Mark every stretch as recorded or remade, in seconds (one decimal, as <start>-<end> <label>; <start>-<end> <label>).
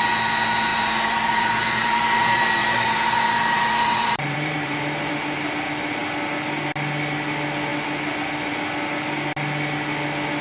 0.0-0.7 recorded; 0.7-5.1 remade; 5.1-10.4 recorded